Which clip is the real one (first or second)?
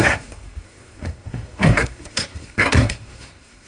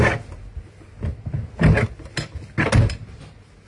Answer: second